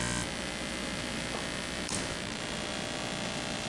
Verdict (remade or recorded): recorded